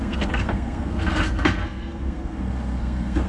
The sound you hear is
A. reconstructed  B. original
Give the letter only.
A